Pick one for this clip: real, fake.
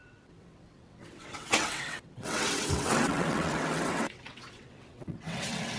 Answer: fake